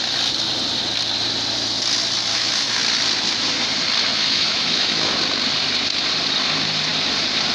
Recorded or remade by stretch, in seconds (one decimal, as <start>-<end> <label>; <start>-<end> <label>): 0.0-2.3 recorded; 2.3-2.8 remade; 2.8-4.1 recorded; 4.1-5.2 remade; 5.2-7.5 recorded